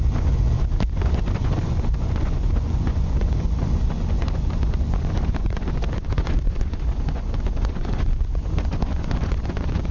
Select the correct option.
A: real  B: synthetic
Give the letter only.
B